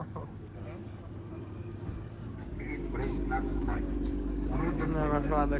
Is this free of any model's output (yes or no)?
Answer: no